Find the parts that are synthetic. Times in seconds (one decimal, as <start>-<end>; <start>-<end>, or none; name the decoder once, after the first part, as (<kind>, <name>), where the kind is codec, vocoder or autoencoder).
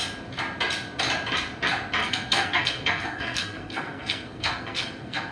2.0-5.3 (codec, SNAC)